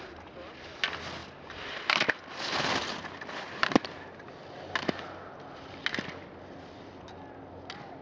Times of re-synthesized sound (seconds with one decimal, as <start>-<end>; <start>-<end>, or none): none